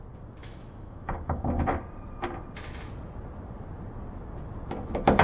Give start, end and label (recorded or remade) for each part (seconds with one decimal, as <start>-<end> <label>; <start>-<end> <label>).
0.0-0.4 recorded; 0.4-1.4 remade; 1.4-5.2 recorded